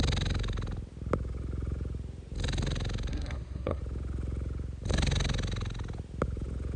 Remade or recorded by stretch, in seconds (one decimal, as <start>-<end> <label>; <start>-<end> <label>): 0.0-3.1 recorded; 3.1-3.8 remade; 3.8-6.8 recorded